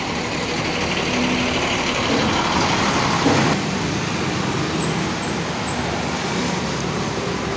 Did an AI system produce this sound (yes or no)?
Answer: no